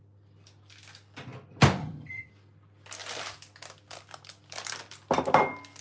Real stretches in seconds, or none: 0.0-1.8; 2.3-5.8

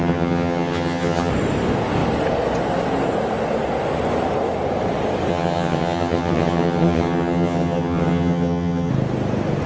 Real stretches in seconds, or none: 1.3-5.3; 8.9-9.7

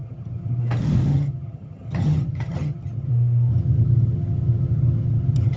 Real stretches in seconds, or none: 0.6-1.1; 3.1-3.5

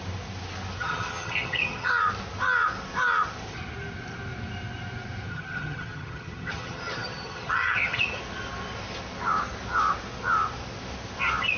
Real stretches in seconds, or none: 0.0-0.8; 1.9-5.3; 8.2-11.6

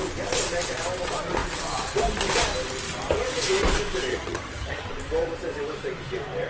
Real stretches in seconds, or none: 0.0-4.1; 4.9-6.5

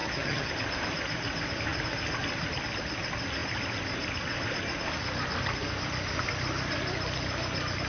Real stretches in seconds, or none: 0.5-7.9

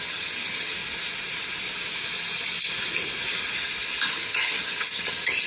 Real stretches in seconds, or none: 0.8-4.1

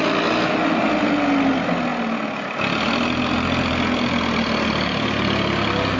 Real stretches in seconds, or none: 0.0-6.0